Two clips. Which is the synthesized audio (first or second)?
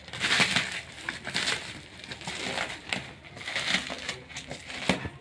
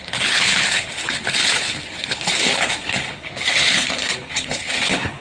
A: second